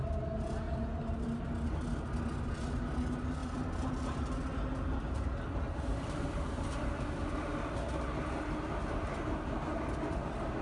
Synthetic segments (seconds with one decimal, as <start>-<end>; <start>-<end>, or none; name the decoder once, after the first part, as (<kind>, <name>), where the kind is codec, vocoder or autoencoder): none

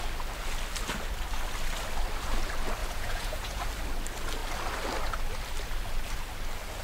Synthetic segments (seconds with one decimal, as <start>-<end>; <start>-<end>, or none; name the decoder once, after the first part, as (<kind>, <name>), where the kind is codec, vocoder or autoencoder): 2.8-3.6 (vocoder, Vocos)

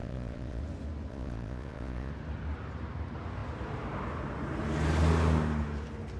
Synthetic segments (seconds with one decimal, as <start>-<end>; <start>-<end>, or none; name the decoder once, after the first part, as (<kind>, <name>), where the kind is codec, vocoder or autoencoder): 0.0-0.6 (vocoder, Vocos); 1.1-2.1

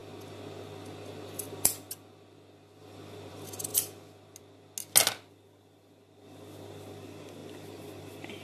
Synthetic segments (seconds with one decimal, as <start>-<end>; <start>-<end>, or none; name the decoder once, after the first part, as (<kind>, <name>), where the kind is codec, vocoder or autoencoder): none

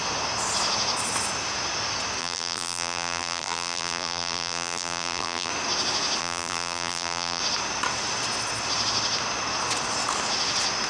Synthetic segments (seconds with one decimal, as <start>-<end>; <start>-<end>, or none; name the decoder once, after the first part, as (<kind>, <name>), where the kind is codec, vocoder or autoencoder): 2.2-5.5 (vocoder, BigVGAN v2); 6.2-7.4